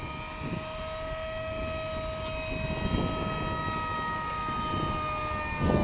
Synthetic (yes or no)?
no